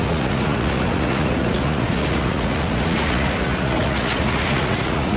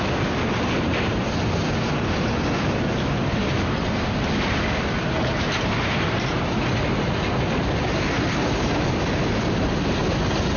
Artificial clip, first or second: first